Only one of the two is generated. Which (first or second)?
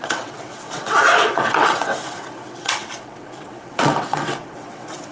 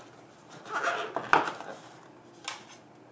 first